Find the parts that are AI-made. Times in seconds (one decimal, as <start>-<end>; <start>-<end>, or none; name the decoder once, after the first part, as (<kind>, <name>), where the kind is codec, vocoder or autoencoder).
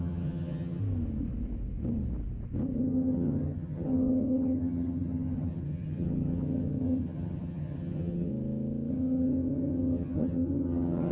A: 0.0-0.8 (vocoder, HiFi-GAN); 2.8-8.3; 8.9-11.1